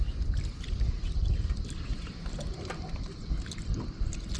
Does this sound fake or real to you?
real